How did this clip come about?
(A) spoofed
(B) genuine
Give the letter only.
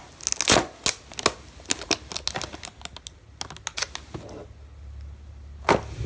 B